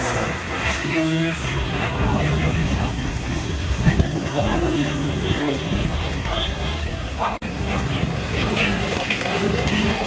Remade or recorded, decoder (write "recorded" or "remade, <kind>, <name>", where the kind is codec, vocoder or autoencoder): remade, codec, SNAC